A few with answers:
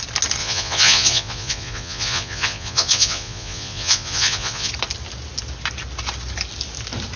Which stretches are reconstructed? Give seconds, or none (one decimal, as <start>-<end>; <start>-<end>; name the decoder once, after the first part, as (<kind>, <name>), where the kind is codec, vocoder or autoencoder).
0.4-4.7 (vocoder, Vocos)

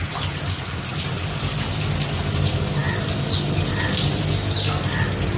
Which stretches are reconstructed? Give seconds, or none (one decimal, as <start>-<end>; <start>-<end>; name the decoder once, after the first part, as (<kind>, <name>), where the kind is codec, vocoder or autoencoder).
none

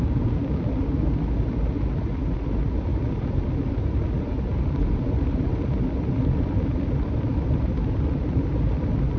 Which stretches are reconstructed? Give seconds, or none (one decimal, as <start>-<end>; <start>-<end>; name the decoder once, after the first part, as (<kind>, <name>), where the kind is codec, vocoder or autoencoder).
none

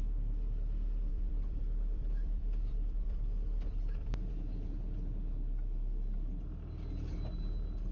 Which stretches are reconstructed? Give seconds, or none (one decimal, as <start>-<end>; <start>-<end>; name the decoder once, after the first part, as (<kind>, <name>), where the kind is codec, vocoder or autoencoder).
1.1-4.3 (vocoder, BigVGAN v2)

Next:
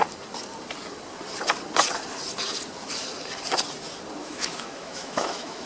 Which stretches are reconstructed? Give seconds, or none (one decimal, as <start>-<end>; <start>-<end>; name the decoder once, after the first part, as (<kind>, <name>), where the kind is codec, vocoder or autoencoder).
4.2-5.7 (autoencoder, DAC-VAE)

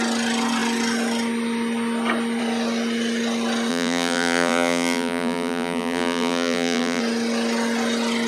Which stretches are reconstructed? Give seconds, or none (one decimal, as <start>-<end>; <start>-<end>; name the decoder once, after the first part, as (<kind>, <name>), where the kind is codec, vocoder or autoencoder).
3.7-7.0 (vocoder, BigVGAN v2)

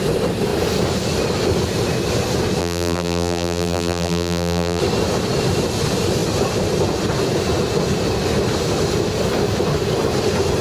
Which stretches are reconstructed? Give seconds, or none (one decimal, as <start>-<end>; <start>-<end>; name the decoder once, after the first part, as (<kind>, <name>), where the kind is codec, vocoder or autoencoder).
2.6-4.8 (vocoder, BigVGAN v2)

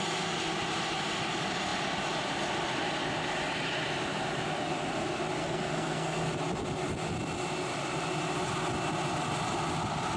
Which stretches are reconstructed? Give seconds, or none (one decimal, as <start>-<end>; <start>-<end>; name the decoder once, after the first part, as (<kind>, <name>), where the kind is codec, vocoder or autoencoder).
5.4-6.3 (codec, SNAC)